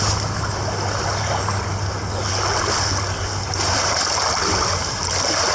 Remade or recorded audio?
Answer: recorded